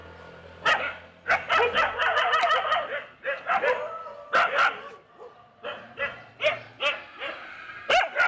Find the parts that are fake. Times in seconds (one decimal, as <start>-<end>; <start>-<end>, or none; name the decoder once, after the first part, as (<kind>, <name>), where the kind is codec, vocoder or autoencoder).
none